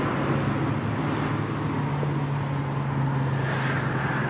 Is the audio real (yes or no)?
yes